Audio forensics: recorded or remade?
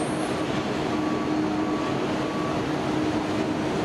recorded